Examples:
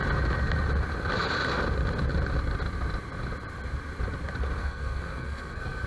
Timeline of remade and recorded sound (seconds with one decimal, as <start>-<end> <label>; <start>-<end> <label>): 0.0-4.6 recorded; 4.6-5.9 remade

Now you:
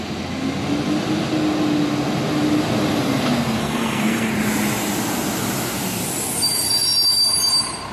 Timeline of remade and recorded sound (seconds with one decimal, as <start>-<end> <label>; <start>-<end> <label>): 0.0-3.6 recorded; 3.6-4.3 remade; 4.3-7.9 recorded

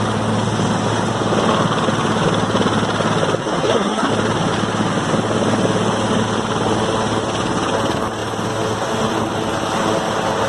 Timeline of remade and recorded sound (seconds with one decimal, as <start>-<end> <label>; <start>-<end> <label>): 0.0-3.4 recorded; 3.4-4.1 remade; 4.1-10.5 recorded

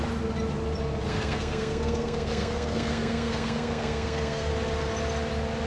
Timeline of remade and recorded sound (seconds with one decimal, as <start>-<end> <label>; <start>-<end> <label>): 0.0-1.1 recorded; 1.1-4.5 remade; 4.5-5.7 recorded

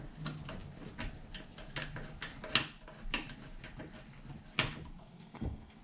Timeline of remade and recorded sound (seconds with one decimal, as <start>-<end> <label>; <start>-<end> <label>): 0.0-5.0 recorded; 5.0-5.8 remade